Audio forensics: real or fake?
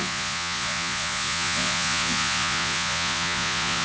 fake